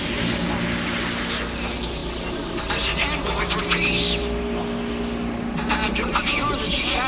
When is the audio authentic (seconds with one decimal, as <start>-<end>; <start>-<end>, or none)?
0.0-7.1

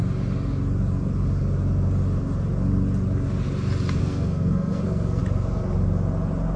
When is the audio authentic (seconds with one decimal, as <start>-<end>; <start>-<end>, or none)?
0.0-4.0; 5.2-6.6